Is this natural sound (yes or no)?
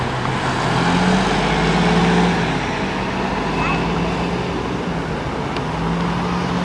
yes